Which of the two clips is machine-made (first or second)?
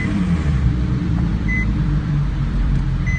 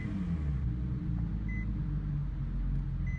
first